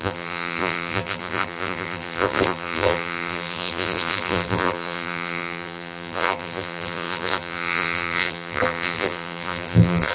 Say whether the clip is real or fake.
fake